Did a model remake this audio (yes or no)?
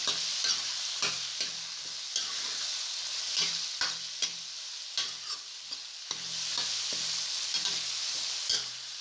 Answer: no